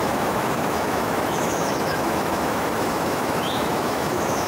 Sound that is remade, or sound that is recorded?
remade